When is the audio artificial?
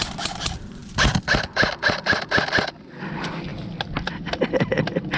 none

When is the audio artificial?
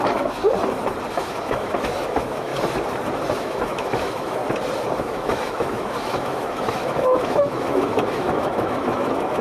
0.0-0.4; 1.1-2.5; 3.3-4.4; 5.0-9.4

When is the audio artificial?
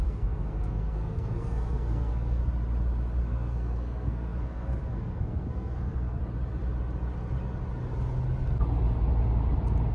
0.0-2.4; 3.2-6.2